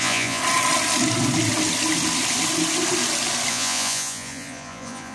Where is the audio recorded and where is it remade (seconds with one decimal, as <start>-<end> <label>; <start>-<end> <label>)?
0.0-0.4 remade; 0.4-3.5 recorded; 3.5-5.1 remade